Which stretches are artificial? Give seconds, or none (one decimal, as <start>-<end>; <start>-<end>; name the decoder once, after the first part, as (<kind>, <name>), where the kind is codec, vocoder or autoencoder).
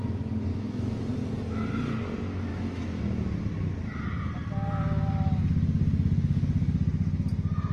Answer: 0.5-1.1 (autoencoder, DAC-VAE); 2.5-3.0